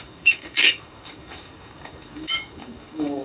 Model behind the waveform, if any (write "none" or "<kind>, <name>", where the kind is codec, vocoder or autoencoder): codec, DAC